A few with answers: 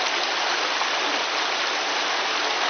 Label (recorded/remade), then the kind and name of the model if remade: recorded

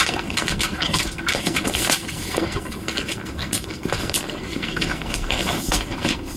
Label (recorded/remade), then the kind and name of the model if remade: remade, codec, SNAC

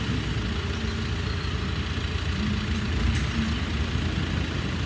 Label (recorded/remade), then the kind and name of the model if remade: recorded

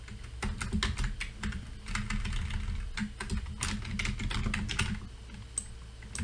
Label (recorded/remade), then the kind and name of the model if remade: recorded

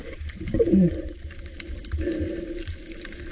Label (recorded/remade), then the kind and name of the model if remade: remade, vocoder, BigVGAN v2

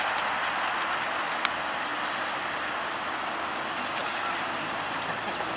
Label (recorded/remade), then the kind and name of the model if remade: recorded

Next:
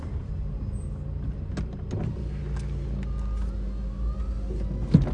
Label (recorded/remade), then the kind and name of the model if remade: recorded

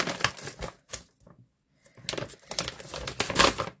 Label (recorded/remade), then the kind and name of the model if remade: recorded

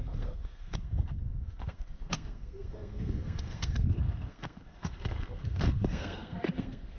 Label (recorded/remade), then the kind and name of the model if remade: remade, codec, SNAC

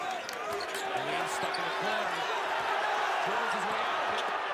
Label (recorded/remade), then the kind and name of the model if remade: recorded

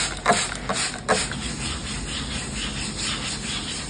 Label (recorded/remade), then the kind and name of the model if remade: recorded